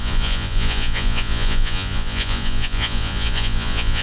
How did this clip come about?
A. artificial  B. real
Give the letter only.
A